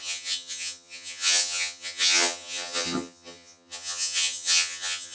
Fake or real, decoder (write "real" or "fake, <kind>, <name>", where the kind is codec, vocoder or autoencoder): fake, vocoder, HiFi-GAN